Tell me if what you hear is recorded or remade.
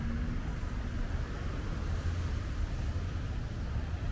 recorded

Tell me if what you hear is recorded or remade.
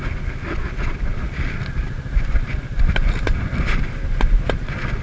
recorded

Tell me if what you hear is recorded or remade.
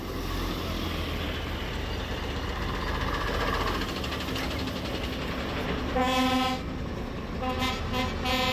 recorded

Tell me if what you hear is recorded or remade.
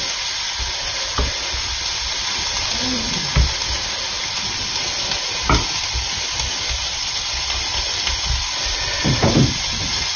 recorded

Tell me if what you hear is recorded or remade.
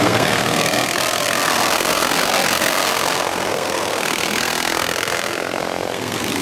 remade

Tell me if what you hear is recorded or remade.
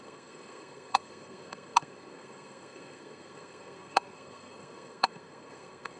remade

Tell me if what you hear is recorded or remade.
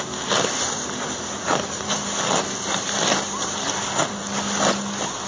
recorded